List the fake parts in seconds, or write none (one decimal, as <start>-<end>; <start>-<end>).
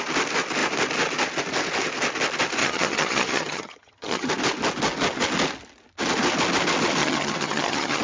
2.6-4.3; 7.0-8.0